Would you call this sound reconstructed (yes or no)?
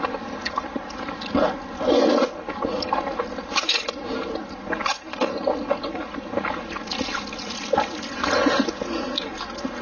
no